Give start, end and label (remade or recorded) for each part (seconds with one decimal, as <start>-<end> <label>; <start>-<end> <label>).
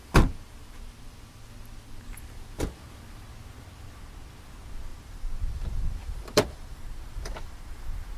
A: 0.0-4.9 recorded; 4.9-8.2 remade